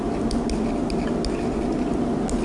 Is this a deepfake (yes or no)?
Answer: no